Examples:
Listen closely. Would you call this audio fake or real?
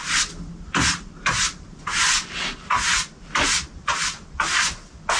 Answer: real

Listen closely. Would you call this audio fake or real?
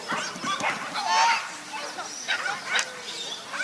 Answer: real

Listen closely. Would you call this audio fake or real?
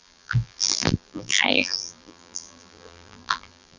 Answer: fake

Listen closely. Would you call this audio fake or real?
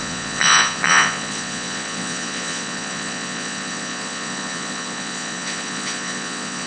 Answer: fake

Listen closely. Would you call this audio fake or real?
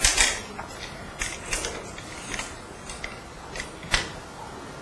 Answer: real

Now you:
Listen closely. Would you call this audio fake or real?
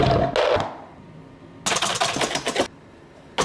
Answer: real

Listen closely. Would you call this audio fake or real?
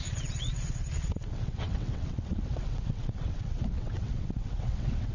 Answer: fake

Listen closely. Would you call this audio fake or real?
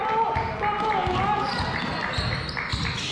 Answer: real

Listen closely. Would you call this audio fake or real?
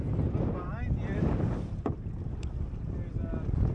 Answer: real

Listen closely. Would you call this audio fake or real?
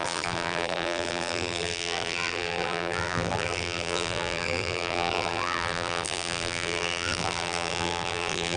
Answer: fake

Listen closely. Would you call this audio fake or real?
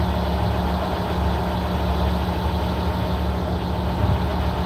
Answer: real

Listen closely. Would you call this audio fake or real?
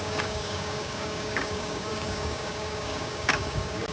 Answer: fake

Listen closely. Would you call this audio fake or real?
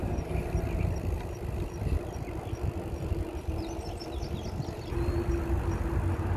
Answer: real